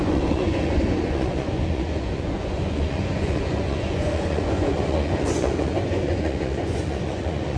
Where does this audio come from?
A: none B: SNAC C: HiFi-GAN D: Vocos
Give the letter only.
D